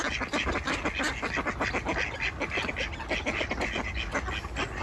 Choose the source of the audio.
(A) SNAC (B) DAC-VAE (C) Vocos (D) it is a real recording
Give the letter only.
D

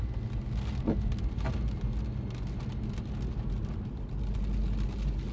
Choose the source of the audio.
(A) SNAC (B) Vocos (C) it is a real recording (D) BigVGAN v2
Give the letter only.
C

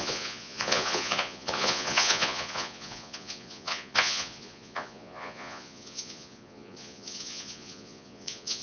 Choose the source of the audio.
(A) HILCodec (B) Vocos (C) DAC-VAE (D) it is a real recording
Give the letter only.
B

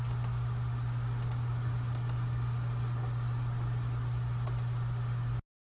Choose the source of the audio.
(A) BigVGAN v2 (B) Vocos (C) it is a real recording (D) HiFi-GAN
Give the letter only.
C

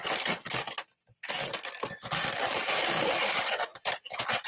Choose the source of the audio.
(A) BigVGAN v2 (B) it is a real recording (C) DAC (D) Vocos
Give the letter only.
B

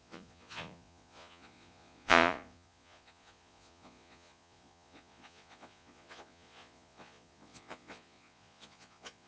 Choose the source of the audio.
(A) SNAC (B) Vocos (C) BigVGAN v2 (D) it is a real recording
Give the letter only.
B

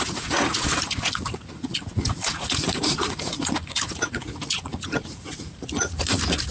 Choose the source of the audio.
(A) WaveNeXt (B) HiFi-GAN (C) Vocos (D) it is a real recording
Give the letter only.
C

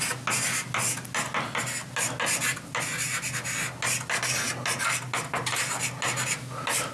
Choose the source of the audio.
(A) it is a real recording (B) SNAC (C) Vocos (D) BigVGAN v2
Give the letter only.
A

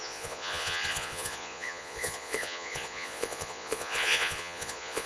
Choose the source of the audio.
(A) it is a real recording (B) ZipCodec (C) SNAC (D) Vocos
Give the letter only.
D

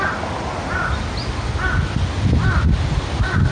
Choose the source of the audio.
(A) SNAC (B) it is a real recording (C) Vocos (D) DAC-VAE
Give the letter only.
B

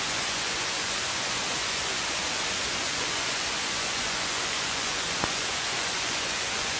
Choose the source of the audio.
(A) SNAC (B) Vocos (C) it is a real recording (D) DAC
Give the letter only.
B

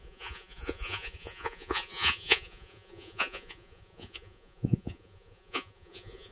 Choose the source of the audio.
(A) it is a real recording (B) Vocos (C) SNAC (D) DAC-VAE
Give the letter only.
B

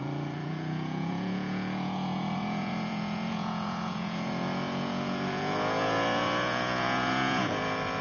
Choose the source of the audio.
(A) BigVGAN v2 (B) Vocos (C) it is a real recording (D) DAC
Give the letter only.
B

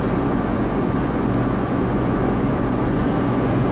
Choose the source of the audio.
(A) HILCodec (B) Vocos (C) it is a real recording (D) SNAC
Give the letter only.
B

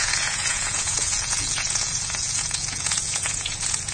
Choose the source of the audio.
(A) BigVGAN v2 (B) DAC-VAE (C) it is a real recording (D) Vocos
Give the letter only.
D